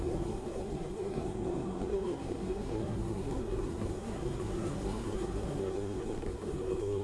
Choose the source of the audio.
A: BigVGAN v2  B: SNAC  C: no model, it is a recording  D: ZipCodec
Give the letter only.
B